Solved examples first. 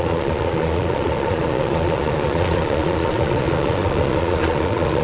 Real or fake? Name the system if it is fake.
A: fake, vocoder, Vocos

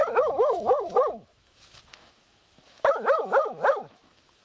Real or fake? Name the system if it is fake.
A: fake, autoencoder, DAC-VAE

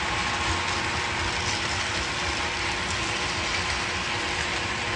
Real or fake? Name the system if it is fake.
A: real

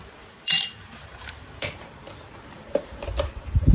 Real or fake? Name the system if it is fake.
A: fake, vocoder, BigVGAN v2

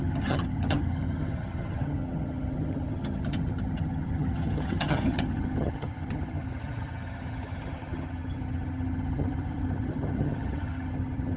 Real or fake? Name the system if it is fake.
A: fake, vocoder, HiFi-GAN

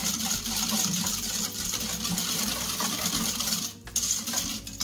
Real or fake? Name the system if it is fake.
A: real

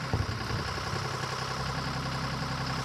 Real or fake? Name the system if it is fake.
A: real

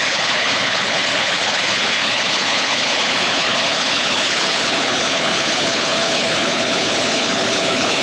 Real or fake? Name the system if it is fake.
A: fake, codec, HILCodec